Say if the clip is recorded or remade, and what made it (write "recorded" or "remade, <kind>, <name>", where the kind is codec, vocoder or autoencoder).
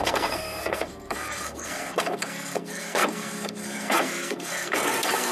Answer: remade, codec, SNAC